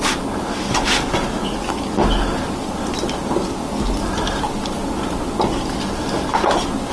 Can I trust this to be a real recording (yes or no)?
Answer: yes